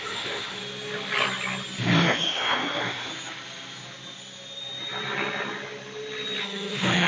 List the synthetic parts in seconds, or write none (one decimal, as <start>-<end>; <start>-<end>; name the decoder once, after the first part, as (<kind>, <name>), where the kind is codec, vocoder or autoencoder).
0.0-0.6 (autoencoder, DAC-VAE); 1.8-3.1; 6.4-7.1